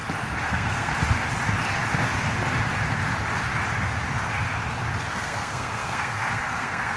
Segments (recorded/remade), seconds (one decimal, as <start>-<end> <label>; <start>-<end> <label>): 0.0-0.5 recorded; 0.5-0.9 remade; 0.9-5.1 recorded; 5.1-7.0 remade